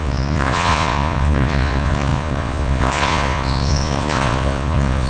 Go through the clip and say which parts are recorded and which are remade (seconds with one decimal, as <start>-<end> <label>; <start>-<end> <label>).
0.0-5.1 remade